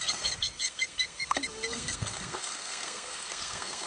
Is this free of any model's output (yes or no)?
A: no